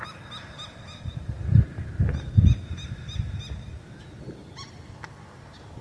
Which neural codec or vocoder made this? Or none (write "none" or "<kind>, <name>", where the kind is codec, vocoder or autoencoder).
none